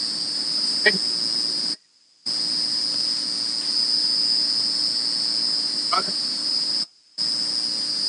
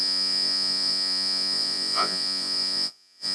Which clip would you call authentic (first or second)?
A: first